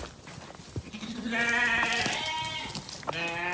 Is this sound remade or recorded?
recorded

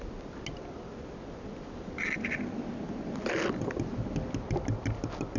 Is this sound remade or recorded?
recorded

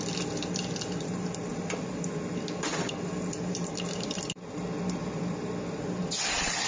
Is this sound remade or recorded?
recorded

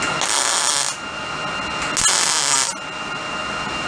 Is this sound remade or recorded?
recorded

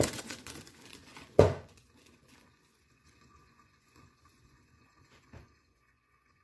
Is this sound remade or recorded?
remade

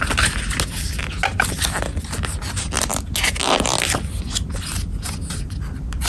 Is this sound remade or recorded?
recorded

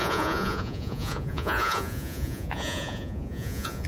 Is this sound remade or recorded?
remade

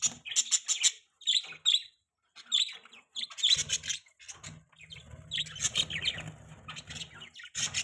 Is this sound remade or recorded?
recorded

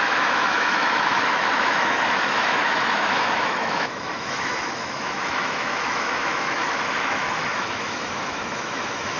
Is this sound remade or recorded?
remade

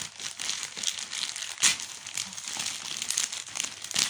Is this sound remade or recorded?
recorded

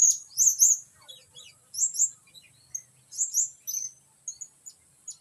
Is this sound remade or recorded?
recorded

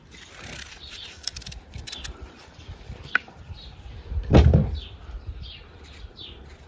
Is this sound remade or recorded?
remade